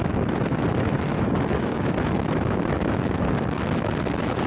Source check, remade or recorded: remade